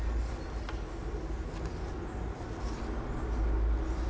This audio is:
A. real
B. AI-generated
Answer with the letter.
A